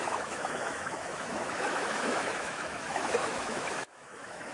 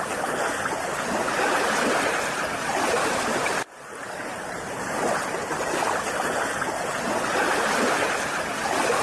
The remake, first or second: first